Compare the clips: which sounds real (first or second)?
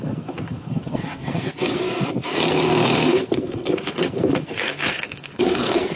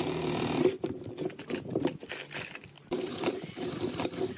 second